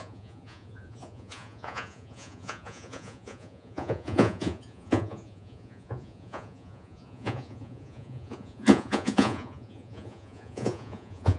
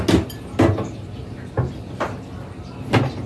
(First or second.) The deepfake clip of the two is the first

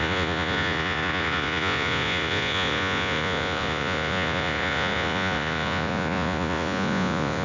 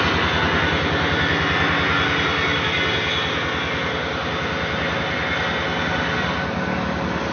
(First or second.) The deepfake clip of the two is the first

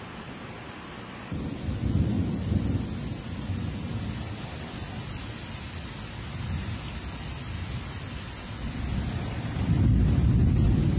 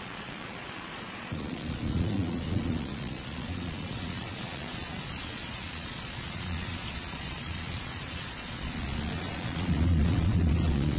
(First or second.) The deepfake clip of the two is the second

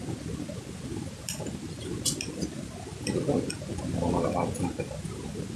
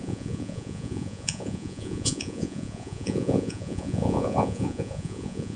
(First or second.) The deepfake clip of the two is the second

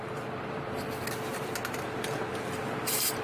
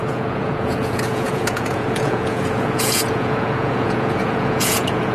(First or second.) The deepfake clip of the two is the second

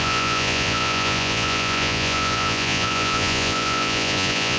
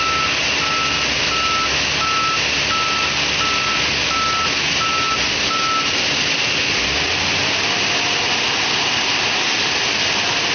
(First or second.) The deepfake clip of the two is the first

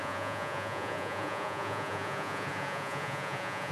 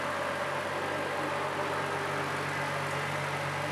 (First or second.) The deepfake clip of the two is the first